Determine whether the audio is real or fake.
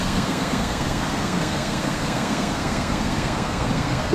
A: fake